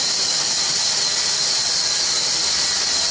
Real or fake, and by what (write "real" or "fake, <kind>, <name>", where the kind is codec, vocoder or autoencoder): real